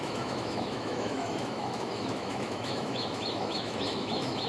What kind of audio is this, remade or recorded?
remade